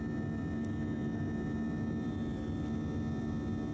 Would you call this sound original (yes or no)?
yes